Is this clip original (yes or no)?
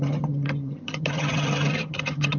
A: no